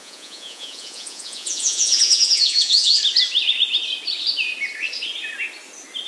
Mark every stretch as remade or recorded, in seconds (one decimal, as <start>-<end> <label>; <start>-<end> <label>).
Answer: 0.0-3.0 remade; 3.0-6.1 recorded